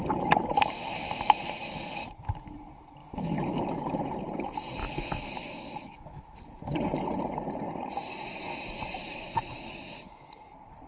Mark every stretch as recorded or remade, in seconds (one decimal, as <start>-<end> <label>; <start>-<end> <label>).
0.0-3.0 recorded; 3.0-3.6 remade; 3.6-4.8 recorded; 4.8-6.4 remade; 6.4-9.0 recorded; 9.0-10.3 remade; 10.3-10.9 recorded